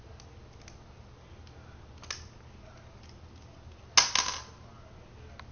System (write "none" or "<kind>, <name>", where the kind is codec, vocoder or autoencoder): none